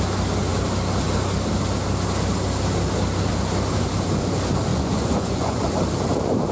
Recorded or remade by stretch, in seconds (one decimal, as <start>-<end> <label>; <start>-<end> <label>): 0.0-4.7 recorded; 4.7-5.7 remade; 5.7-6.5 recorded